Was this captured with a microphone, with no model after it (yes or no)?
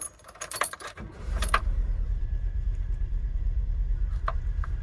no